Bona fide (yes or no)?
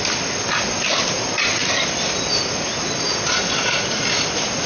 yes